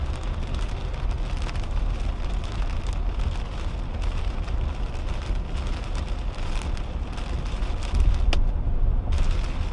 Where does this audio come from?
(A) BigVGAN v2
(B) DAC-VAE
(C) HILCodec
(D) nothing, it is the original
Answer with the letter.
D